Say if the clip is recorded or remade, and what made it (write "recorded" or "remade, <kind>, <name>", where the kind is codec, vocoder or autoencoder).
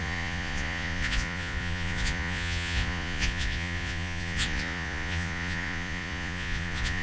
remade, vocoder, Vocos